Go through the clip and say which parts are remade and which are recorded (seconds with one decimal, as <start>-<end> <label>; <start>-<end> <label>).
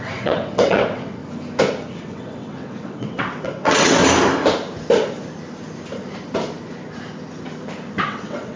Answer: 0.0-1.2 remade; 1.2-1.9 recorded; 1.9-4.0 remade; 4.0-8.0 recorded; 8.0-8.6 remade